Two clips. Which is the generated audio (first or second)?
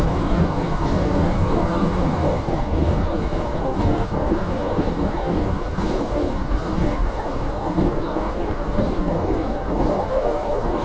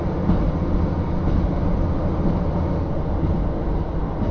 first